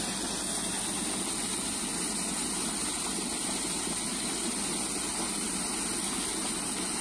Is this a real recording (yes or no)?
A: yes